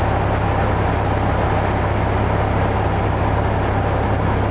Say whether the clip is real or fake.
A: real